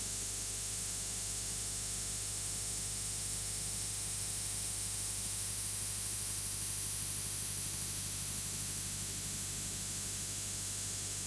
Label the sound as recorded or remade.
remade